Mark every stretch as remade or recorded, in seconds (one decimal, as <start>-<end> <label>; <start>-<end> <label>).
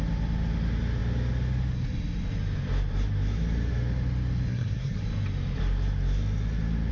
0.0-4.5 recorded; 4.5-5.0 remade; 5.0-6.9 recorded